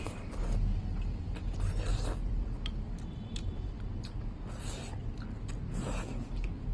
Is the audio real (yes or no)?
yes